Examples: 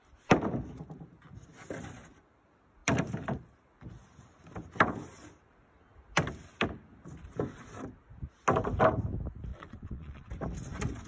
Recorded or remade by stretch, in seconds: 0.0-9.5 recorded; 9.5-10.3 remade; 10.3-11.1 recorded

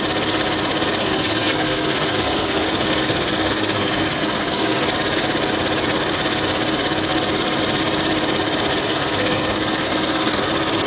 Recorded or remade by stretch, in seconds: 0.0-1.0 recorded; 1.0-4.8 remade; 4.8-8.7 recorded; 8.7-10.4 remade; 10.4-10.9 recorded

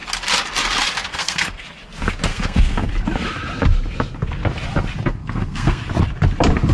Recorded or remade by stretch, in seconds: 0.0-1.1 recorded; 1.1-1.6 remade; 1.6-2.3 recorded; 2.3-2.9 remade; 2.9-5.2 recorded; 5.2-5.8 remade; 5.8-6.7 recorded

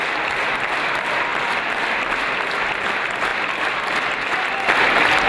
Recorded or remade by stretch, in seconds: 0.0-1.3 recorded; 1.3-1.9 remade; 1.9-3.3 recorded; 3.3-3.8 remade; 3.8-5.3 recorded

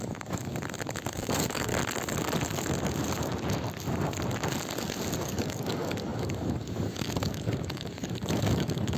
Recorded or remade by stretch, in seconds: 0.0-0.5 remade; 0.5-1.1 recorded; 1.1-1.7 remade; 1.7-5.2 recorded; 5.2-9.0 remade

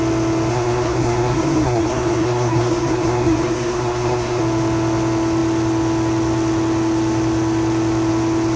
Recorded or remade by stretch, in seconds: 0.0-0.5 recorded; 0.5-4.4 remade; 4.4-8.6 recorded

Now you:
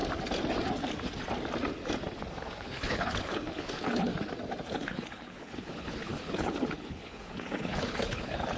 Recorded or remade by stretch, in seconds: 0.0-2.6 recorded; 2.6-4.1 remade; 4.1-4.7 recorded; 4.7-8.6 remade

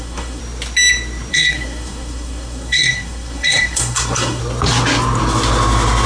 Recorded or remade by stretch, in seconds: 0.0-0.4 remade; 0.4-1.3 recorded; 1.3-4.4 remade; 4.4-6.1 recorded